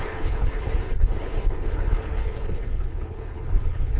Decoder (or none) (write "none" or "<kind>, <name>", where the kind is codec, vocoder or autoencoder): codec, HILCodec